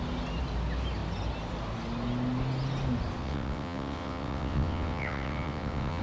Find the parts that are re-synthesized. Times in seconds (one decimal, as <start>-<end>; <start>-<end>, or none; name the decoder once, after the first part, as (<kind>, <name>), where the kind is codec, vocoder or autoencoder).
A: 3.2-6.0 (vocoder, WaveNeXt)